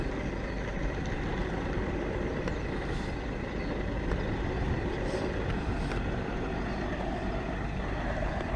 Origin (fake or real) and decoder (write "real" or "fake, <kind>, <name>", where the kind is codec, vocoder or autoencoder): fake, vocoder, BigVGAN v2